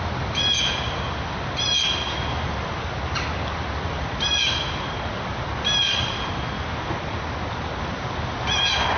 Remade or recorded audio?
recorded